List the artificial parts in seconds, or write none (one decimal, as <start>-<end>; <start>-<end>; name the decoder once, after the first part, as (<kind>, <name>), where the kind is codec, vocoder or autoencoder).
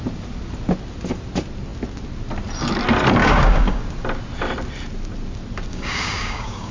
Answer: 3.2-3.8 (codec, DAC); 5.7-6.7